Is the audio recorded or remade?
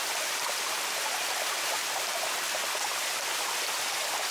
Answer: recorded